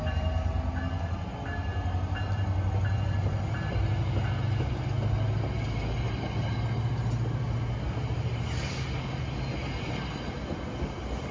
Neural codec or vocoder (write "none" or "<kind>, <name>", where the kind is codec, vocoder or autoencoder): none